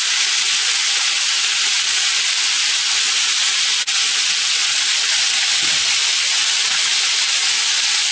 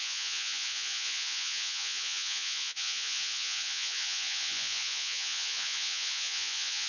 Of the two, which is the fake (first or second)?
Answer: second